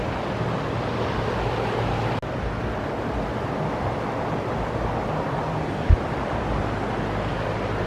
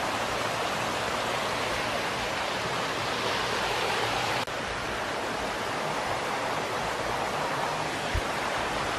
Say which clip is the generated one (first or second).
second